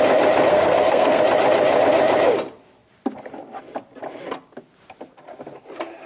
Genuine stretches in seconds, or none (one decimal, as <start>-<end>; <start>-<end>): 0.0-0.5; 1.2-6.1